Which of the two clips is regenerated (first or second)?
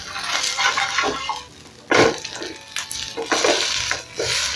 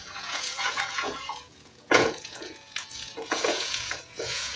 second